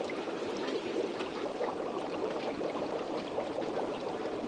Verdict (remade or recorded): remade